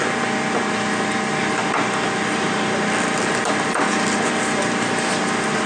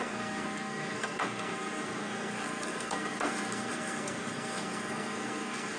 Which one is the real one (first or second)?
first